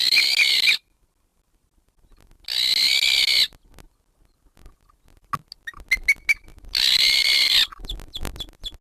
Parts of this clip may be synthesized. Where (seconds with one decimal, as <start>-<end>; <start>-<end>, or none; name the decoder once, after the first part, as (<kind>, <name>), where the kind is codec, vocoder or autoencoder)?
none